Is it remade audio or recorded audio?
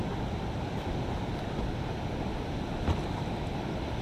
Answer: recorded